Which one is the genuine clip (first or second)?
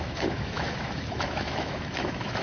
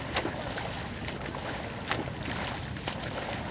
second